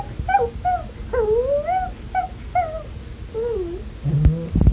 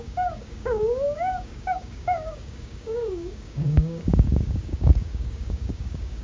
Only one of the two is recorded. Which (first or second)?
first